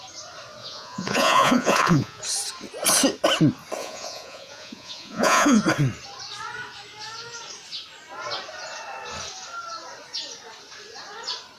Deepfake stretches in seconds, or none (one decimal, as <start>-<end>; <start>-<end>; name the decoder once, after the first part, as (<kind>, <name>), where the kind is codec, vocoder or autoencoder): 0.6-2.2 (vocoder, Vocos); 3.8-5.6